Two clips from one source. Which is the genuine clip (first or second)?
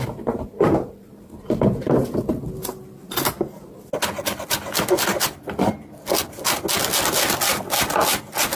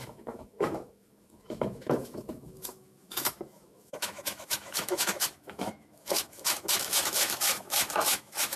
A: first